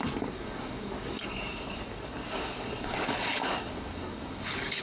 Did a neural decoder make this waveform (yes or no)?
yes